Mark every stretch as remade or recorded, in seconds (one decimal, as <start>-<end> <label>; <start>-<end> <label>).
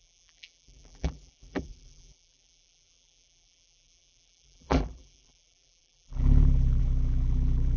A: 0.0-7.8 remade